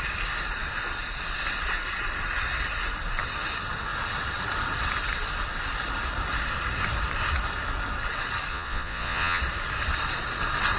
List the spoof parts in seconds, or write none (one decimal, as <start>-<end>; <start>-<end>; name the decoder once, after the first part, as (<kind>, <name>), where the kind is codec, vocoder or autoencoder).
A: 8.5-9.4 (vocoder, Vocos)